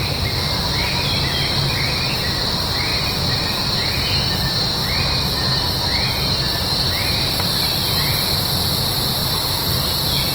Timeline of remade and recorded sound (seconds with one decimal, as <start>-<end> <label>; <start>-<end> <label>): 0.0-2.9 recorded; 2.9-3.6 remade; 3.6-9.2 recorded; 9.2-9.8 remade; 9.8-10.3 recorded